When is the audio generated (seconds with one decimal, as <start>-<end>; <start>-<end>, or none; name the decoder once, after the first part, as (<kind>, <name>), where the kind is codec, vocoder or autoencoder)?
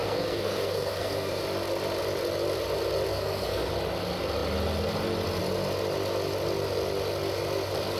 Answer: 0.0-1.4 (codec, SNAC); 3.1-3.7